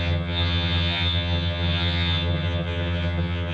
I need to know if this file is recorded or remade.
remade